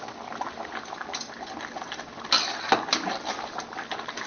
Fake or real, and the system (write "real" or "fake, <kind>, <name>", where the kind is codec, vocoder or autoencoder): real